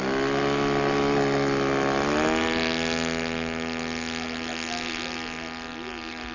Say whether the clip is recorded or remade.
recorded